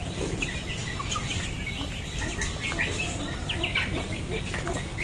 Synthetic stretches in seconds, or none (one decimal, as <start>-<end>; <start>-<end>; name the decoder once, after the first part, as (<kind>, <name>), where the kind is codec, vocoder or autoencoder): none